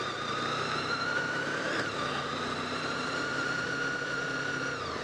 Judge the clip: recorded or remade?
remade